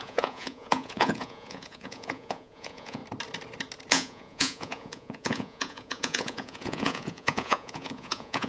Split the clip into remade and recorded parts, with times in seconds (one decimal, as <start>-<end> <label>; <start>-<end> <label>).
0.0-3.0 remade; 3.0-3.9 recorded; 3.9-8.5 remade